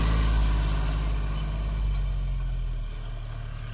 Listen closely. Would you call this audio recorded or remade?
recorded